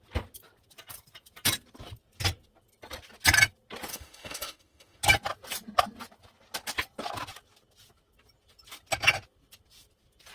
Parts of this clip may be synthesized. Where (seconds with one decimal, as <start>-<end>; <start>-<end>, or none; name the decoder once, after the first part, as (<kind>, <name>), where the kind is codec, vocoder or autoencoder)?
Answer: 3.9-5.0 (autoencoder, DAC-VAE)